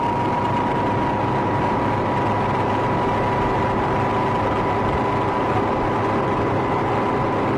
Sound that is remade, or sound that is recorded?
recorded